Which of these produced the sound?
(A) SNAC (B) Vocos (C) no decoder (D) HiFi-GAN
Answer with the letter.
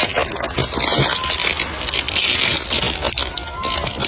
C